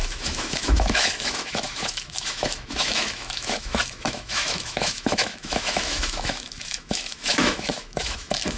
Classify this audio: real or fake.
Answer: fake